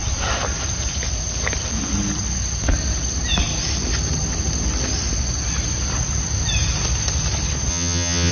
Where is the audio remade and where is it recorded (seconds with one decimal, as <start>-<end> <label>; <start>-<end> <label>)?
0.0-7.7 recorded; 7.7-8.3 remade